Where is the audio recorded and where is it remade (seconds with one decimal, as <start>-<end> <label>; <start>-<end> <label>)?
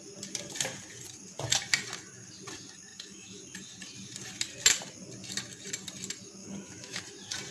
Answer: 0.0-2.9 recorded; 2.9-3.4 remade; 3.4-6.4 recorded; 6.4-7.0 remade; 7.0-7.5 recorded